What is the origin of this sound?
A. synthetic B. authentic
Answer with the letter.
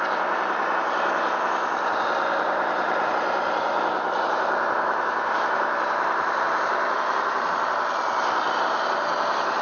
A